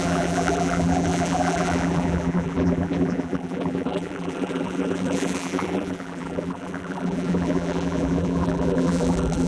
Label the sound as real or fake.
fake